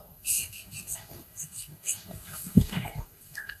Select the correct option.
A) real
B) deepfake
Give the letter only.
B